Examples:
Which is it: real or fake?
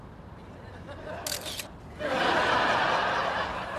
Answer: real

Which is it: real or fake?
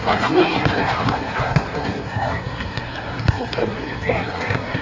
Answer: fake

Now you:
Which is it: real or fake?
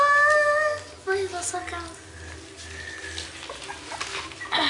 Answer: real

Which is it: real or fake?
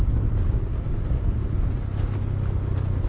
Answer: real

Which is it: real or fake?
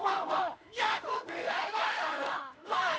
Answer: fake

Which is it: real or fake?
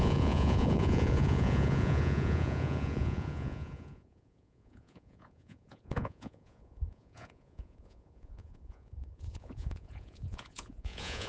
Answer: fake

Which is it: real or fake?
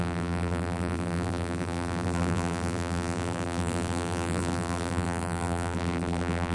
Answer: fake